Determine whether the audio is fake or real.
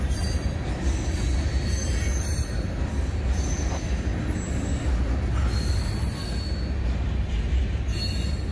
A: real